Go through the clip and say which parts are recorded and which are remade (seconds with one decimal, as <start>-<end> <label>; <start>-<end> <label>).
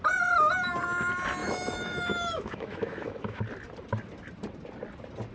0.0-1.4 recorded; 1.4-3.4 remade; 3.4-5.3 recorded